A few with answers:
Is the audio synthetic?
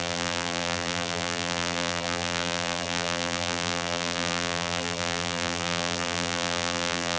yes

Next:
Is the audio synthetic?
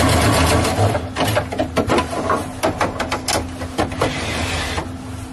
no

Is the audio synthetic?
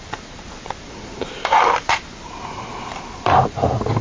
yes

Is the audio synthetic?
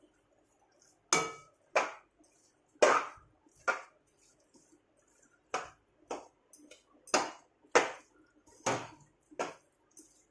no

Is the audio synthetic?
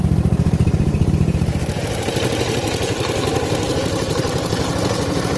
no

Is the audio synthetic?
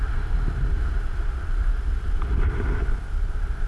no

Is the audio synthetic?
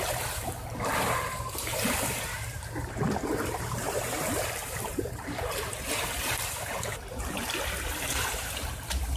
yes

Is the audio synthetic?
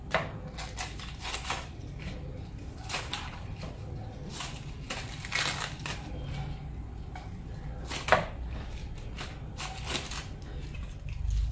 no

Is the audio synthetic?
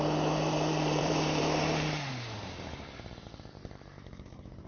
yes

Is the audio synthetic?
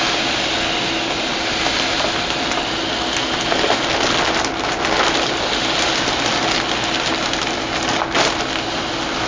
no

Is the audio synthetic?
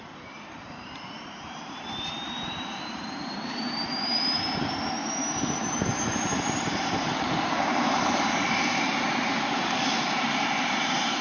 yes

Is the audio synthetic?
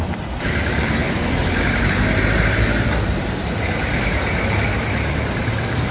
no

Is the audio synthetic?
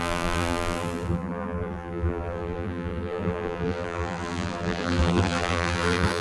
yes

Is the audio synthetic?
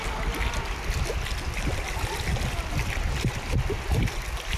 no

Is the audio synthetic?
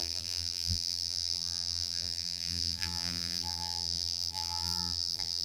yes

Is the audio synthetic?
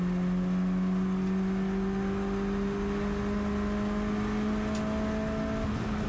no